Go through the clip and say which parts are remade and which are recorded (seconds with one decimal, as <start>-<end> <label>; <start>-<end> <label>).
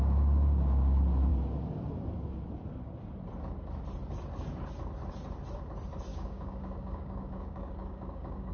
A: 0.0-6.1 recorded; 6.1-8.5 remade